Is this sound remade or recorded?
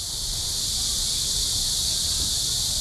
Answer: recorded